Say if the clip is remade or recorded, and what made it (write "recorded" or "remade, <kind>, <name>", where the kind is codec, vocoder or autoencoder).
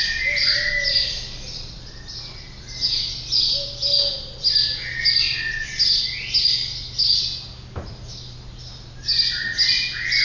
recorded